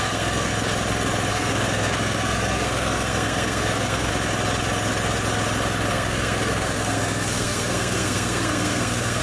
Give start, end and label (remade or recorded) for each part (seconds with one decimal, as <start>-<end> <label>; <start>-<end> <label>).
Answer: 0.0-0.5 remade; 0.5-1.3 recorded; 1.3-4.1 remade; 4.1-5.9 recorded; 5.9-9.2 remade